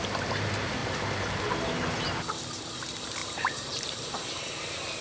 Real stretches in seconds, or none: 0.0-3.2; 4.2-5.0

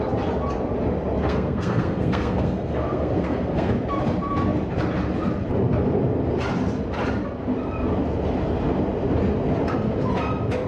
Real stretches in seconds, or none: 0.0-1.2; 3.7-10.7

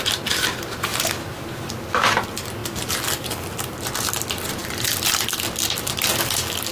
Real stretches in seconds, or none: 0.0-6.7

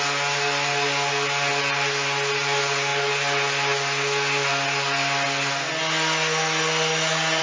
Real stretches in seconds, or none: 0.0-7.4